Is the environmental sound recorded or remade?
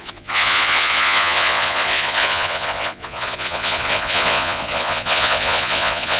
remade